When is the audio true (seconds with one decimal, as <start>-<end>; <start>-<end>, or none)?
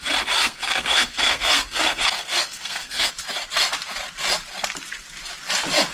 0.0-0.4; 3.1-5.9